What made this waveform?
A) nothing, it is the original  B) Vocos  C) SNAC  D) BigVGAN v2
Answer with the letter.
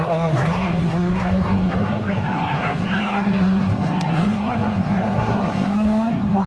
C